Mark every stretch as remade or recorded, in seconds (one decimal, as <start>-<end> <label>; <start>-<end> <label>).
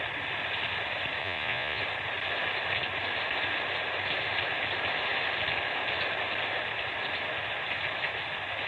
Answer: 0.0-1.2 recorded; 1.2-1.8 remade; 1.8-8.7 recorded